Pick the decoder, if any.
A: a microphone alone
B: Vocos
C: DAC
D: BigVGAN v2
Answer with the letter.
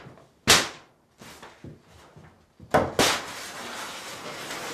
A